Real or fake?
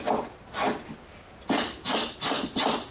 real